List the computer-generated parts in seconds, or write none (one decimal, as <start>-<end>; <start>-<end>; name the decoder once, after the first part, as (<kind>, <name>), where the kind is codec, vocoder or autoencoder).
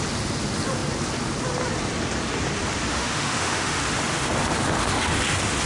2.9-3.8 (autoencoder, DAC-VAE)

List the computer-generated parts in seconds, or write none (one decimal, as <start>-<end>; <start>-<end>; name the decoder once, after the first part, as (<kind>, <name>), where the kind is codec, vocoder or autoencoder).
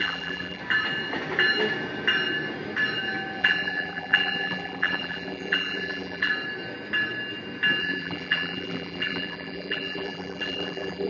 0.0-0.6 (vocoder, BigVGAN v2); 3.4-6.3; 7.8-11.1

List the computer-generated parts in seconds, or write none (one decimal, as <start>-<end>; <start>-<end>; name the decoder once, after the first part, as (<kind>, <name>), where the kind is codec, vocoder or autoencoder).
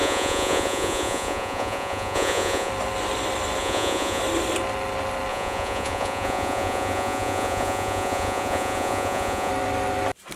0.0-2.7 (vocoder, Vocos); 3.6-4.2; 5.3-9.5